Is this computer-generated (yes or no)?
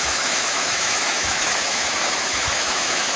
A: yes